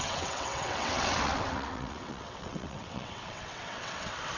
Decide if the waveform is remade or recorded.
remade